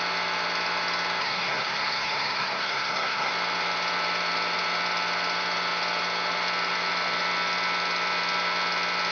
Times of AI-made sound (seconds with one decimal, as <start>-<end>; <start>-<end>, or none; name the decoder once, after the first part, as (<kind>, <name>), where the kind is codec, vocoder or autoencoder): 1.2-3.3 (codec, SNAC)

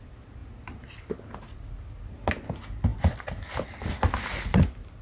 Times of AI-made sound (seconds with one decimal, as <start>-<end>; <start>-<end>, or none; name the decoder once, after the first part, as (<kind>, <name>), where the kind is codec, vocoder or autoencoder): none

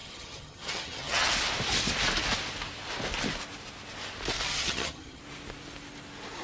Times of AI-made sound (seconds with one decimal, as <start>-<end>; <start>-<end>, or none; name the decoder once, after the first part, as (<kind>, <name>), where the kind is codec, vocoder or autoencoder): 0.0-1.3 (vocoder, HiFi-GAN); 4.5-5.2

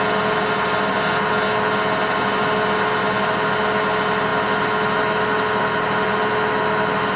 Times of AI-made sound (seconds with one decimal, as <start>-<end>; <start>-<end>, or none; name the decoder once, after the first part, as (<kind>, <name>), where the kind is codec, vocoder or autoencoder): none

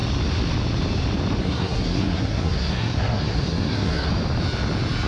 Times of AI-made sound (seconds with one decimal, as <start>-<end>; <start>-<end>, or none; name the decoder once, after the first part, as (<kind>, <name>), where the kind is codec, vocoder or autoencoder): 1.4-4.1 (codec, SNAC)

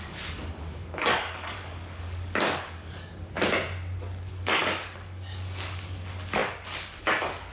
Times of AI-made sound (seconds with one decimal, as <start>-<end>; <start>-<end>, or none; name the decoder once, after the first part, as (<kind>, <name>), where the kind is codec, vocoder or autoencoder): 0.0-3.1 (codec, DAC); 4.3-7.5

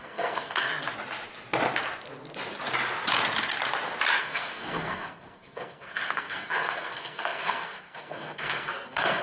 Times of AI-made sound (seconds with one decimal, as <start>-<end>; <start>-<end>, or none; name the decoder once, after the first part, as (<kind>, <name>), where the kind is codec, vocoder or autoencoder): 0.0-0.7 (codec, SNAC); 4.2-9.2

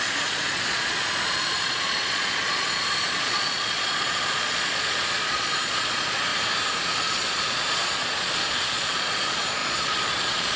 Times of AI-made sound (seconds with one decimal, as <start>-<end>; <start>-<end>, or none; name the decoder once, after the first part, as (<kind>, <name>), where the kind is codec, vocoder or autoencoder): 0.0-6.3 (vocoder, Vocos); 7.0-10.6